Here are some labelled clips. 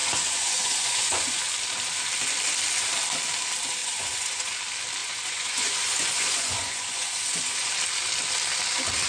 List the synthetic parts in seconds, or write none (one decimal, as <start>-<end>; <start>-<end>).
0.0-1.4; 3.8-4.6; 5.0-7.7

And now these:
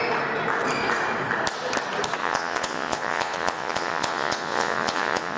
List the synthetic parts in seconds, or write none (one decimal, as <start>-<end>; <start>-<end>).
2.2-5.4

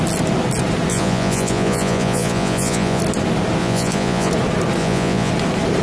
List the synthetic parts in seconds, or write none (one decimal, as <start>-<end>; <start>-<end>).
0.9-3.0; 3.6-4.3; 4.8-5.3

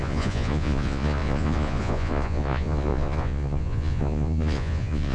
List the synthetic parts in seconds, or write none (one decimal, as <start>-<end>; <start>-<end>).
0.0-5.1

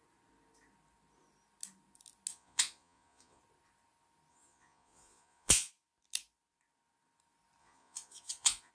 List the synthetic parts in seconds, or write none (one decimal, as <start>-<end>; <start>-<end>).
2.3-3.4; 4.3-5.7; 7.6-8.7

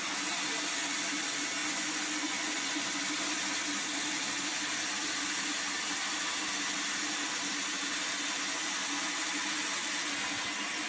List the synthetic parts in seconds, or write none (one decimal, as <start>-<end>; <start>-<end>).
1.6-3.0